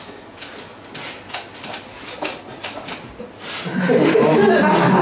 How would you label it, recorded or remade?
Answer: recorded